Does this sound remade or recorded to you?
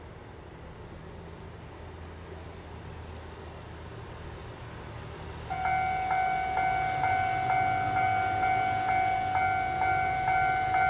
recorded